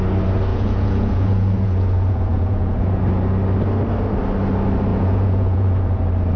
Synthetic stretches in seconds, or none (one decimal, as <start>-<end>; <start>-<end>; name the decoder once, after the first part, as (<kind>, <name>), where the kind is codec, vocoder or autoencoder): 0.5-3.0 (vocoder, Vocos); 4.9-6.0